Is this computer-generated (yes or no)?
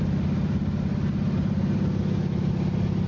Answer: no